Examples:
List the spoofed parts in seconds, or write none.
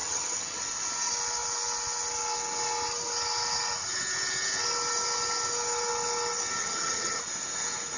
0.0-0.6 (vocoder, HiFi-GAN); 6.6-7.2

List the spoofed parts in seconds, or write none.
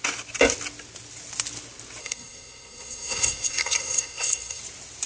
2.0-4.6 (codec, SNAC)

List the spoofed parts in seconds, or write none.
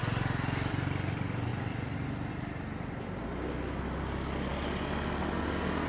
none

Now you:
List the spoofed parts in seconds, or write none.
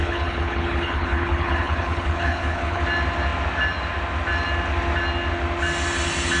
0.0-2.8 (codec, HILCodec)